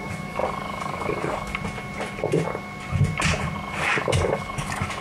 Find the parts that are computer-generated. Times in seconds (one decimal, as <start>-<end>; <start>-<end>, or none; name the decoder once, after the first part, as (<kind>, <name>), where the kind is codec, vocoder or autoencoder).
0.0-1.5 (codec, DAC); 3.7-5.0